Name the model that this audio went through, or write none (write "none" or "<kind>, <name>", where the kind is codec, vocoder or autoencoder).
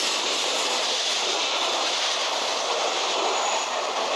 none